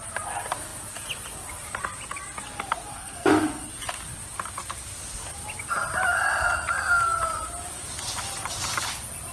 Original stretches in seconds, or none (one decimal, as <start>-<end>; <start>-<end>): 0.0-2.9; 3.7-9.3